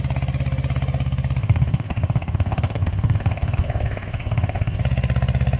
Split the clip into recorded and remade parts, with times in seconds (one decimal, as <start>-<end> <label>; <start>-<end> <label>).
0.0-1.4 recorded; 1.4-4.8 remade; 4.8-5.6 recorded